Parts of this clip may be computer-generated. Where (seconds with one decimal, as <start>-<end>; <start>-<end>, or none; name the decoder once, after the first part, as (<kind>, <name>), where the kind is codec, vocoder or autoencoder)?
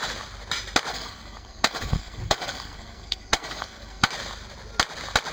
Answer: 0.9-4.1 (codec, SNAC)